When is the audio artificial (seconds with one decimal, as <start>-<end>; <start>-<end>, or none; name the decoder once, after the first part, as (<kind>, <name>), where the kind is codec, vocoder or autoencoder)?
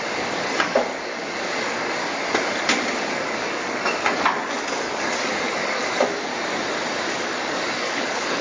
0.0-2.1 (codec, DAC); 3.0-6.3; 7.1-8.4